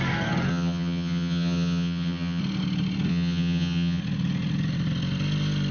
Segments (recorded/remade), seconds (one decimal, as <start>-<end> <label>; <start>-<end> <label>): 0.0-0.5 recorded; 0.5-2.4 remade; 2.4-3.1 recorded; 3.1-4.0 remade; 4.0-5.7 recorded